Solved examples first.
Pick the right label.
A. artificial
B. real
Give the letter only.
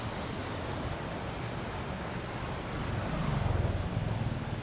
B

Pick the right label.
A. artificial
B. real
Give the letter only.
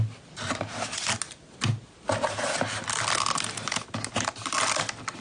B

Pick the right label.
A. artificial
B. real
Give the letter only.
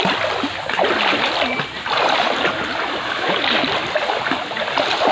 B